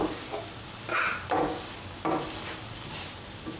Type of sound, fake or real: real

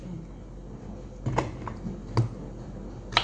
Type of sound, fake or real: real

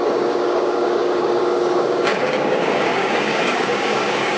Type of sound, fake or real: fake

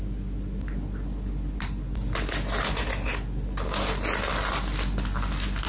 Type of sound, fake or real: real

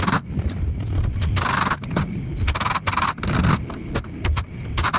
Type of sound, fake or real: real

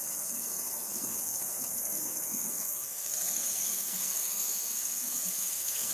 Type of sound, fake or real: fake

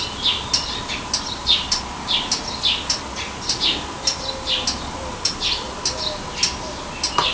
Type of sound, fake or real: real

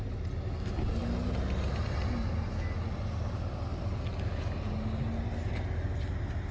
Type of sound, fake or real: real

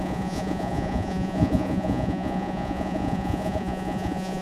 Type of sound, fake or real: fake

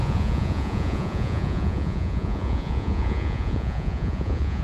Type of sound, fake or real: fake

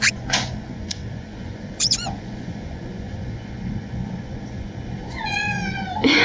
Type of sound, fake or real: fake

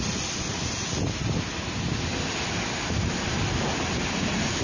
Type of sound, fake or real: real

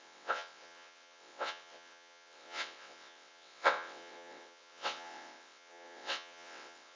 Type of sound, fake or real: fake